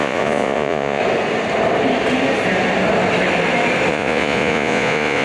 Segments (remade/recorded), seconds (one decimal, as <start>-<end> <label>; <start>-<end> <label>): 0.0-1.0 remade; 1.0-3.9 recorded; 3.9-5.2 remade